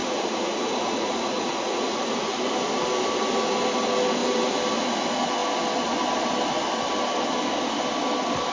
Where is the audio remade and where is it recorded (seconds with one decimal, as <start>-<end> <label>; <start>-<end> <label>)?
0.0-2.3 remade; 2.3-8.5 recorded